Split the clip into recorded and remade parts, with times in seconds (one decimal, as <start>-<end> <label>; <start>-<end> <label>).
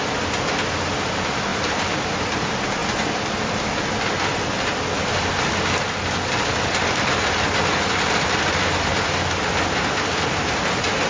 0.0-1.5 recorded; 1.5-2.0 remade; 2.0-11.1 recorded